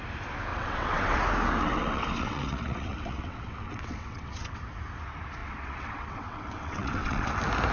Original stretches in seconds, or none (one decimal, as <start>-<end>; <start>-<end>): 0.0-0.5; 1.2-1.6; 4.6-5.4; 7.3-7.7